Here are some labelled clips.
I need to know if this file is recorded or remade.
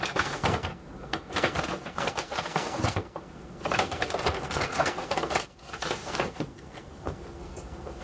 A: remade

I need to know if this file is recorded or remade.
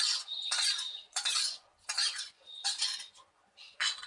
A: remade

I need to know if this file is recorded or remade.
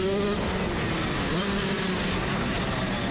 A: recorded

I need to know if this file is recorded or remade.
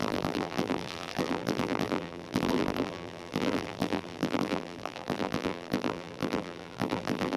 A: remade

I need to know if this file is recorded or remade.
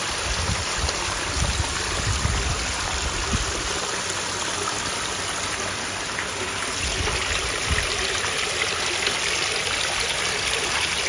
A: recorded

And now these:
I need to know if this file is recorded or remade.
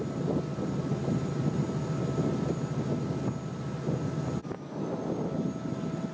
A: recorded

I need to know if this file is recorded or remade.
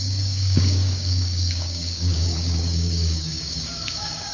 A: remade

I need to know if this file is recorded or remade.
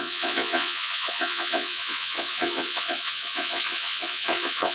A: remade